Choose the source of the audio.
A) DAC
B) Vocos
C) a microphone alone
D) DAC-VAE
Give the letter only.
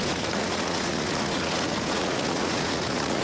B